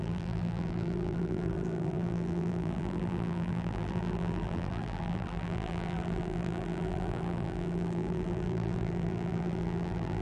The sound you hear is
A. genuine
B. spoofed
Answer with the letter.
B